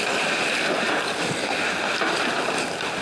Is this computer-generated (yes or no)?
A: no